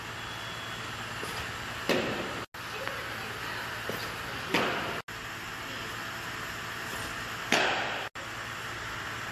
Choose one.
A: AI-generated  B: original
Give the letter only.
B